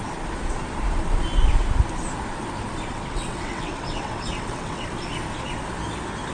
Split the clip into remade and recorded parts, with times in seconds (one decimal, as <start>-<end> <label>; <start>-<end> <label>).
0.0-2.9 recorded; 2.9-4.9 remade; 4.9-6.3 recorded